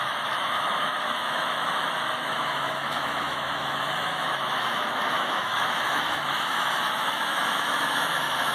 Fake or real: fake